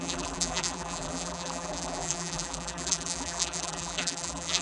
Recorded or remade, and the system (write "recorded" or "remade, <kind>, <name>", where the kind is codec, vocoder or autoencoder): remade, vocoder, BigVGAN v2